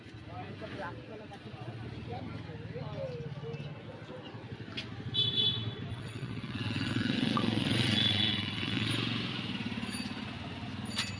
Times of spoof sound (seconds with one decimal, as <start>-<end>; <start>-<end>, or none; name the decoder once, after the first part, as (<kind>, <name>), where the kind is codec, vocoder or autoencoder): 5.9-8.9 (vocoder, WaveNeXt)